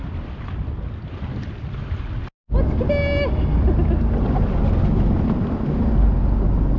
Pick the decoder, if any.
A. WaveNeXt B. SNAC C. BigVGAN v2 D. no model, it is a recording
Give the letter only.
D